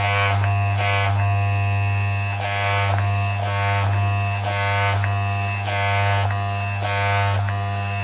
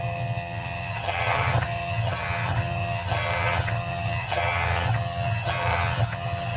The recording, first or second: first